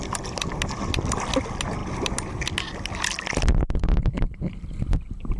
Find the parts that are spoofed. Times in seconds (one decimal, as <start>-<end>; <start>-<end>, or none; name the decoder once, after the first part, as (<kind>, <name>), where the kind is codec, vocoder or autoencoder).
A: none